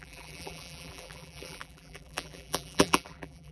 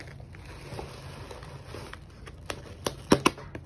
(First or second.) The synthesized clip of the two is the first